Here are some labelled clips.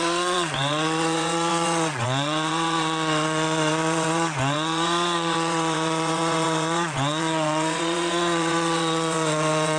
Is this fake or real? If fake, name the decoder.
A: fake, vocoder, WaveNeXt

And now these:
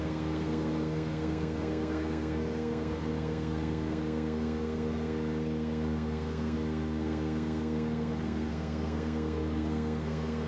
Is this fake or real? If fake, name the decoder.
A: fake, codec, SNAC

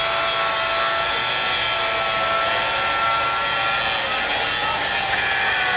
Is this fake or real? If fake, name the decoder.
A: real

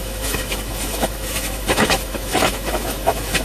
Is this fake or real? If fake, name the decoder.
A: fake, autoencoder, DAC-VAE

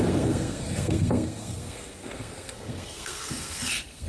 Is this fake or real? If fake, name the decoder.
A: fake, codec, SNAC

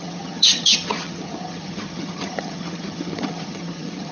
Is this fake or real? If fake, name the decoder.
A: fake, vocoder, HiFi-GAN